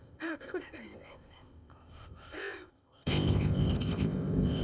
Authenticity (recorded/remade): remade